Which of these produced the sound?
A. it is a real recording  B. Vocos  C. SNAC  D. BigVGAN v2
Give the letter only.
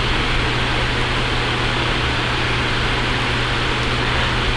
A